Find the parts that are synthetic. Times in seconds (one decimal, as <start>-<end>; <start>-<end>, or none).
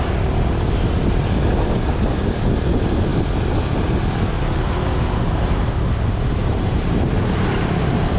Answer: 6.4-7.0